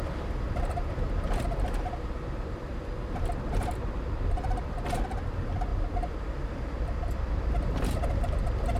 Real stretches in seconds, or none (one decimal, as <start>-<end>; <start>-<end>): 2.7-3.3